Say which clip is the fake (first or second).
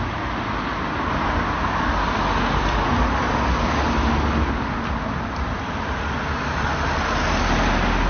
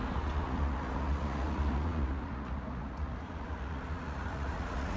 second